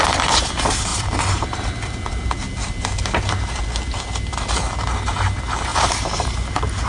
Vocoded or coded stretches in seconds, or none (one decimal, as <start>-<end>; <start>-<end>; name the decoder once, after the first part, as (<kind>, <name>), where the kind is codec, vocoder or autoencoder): 5.7-6.9 (vocoder, BigVGAN v2)